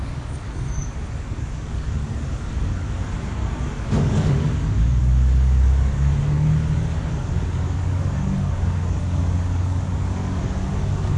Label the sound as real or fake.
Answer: fake